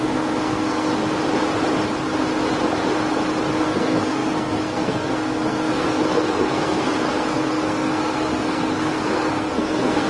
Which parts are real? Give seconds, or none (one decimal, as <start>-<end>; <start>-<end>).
0.9-3.6